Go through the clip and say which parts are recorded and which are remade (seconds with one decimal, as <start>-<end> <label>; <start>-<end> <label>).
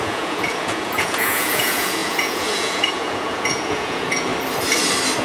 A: 0.0-4.3 remade; 4.3-5.2 recorded